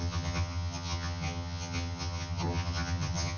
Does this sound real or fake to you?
fake